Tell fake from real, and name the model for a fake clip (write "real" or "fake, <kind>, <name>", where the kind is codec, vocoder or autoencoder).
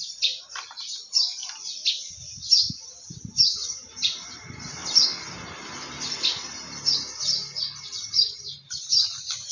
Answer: real